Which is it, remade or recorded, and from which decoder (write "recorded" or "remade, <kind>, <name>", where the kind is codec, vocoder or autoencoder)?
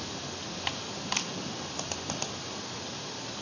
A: recorded